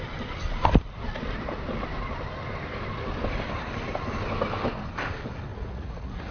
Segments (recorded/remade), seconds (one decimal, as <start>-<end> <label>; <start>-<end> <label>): 0.0-5.5 recorded; 5.5-6.3 remade